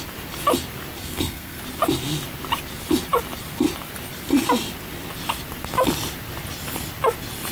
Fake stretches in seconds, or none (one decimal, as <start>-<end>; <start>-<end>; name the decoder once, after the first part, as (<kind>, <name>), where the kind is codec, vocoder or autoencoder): 1.0-1.6 (codec, SNAC)